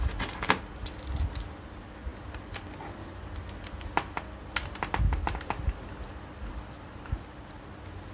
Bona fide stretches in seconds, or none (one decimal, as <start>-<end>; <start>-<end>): 0.0-8.1